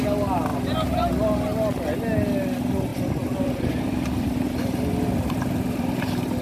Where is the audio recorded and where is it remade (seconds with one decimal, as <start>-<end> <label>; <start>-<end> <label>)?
0.0-2.9 recorded; 2.9-6.4 remade